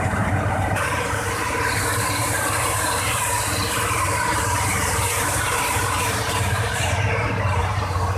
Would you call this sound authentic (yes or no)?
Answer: no